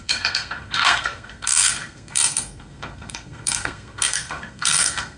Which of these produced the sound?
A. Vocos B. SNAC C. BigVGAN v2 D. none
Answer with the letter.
B